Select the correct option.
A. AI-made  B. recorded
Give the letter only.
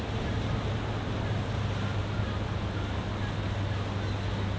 B